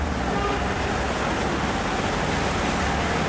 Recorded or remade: recorded